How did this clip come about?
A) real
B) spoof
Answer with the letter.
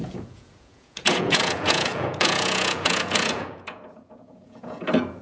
B